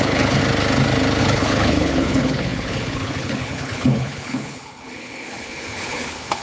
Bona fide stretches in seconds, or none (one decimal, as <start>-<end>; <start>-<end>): 0.4-1.2